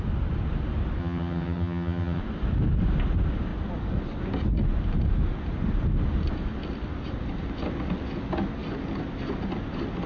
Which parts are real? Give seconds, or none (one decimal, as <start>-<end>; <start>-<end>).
0.0-1.0; 2.2-10.1